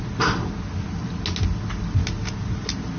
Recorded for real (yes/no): yes